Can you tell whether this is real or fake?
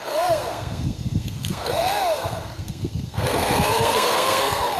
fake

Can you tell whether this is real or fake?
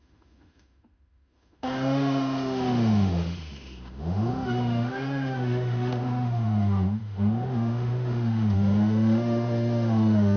fake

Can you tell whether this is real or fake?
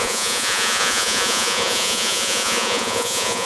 fake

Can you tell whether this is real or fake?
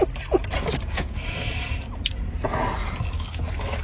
real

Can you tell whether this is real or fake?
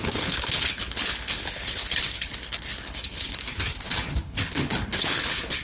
fake